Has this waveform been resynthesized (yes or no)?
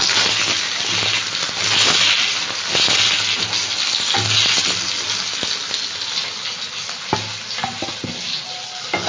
no